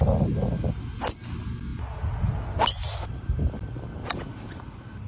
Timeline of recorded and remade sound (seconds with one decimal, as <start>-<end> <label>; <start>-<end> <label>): 0.0-5.1 recorded